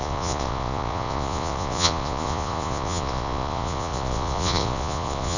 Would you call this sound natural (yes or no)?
no